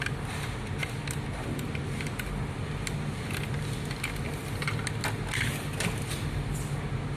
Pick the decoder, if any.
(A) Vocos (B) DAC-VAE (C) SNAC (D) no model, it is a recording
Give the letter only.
D